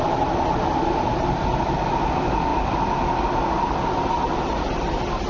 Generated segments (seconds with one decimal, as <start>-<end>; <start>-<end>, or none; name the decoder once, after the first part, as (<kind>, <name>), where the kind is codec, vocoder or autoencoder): none

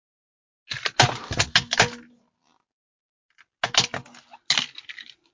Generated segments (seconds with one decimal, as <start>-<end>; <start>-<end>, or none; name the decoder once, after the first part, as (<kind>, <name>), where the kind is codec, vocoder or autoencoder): none

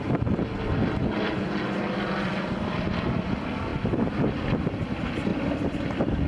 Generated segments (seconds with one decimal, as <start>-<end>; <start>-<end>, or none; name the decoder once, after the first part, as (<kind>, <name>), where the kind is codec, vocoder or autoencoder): 3.7-4.6 (vocoder, BigVGAN v2); 5.3-6.3

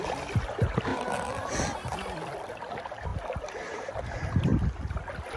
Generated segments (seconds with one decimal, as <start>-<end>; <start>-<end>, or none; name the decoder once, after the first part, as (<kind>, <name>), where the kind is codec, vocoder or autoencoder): none

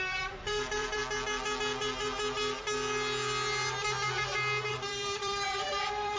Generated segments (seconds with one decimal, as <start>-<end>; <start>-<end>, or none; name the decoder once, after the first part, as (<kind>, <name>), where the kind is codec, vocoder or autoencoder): 0.0-1.0 (vocoder, BigVGAN v2); 4.7-6.2